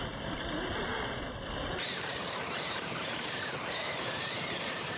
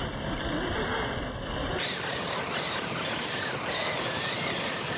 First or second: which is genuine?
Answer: second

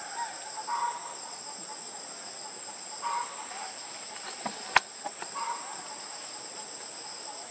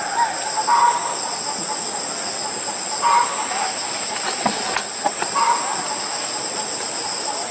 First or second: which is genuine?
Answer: second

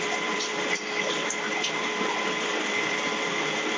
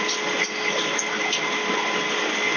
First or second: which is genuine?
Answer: second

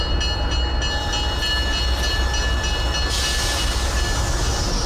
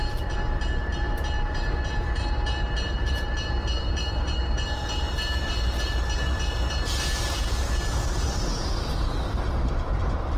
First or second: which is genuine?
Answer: first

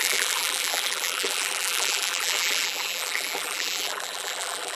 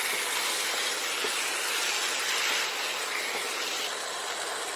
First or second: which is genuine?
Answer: second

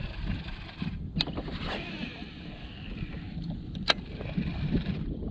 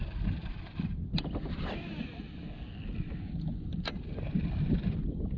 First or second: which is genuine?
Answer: second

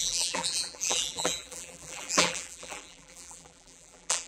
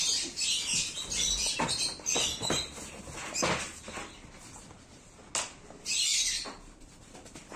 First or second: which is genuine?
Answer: second